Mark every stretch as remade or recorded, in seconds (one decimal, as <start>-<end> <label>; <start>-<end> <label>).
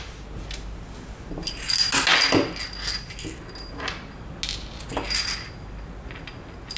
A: 0.0-6.8 recorded